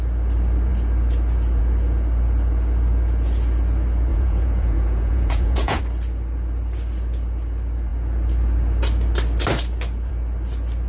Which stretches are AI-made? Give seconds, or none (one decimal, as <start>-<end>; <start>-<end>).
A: 4.1-5.8